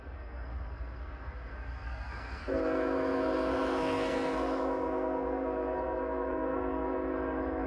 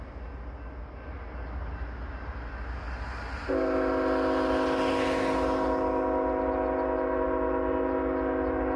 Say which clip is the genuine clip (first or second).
second